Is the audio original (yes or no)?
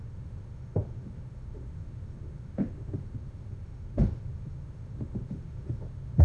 no